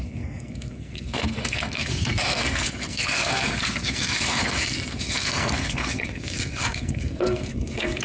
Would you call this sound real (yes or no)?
no